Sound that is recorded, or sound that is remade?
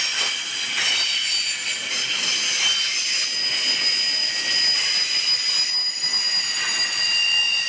recorded